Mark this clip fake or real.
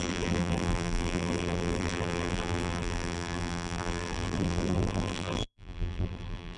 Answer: fake